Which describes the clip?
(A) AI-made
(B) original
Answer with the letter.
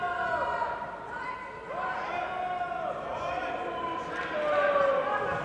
B